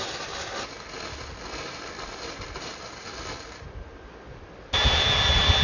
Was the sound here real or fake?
real